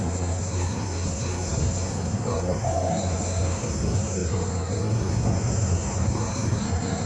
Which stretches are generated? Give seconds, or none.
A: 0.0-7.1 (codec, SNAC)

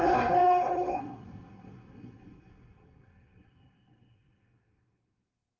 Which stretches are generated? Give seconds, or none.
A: 0.0-5.6 (codec, SNAC)

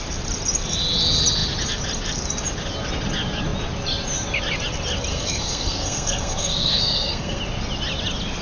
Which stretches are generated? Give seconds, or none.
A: 5.1-7.4 (codec, SNAC)

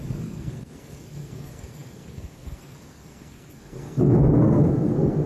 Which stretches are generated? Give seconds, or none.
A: 0.0-5.3 (codec, SNAC)

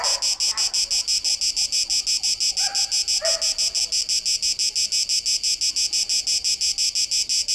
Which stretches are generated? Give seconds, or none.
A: none

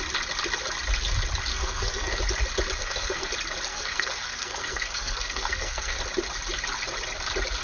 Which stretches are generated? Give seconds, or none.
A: 1.5-2.2 (codec, SNAC); 2.8-3.3; 3.7-6.0